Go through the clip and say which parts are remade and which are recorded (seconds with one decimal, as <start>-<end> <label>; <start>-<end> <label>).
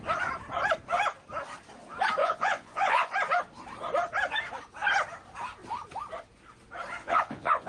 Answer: 0.0-2.2 recorded; 2.2-3.1 remade; 3.1-7.0 recorded; 7.0-7.7 remade